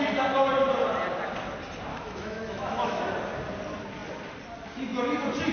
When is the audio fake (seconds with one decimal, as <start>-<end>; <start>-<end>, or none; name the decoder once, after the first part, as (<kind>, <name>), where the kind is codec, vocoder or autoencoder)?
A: 1.9-3.1 (autoencoder, DAC-VAE)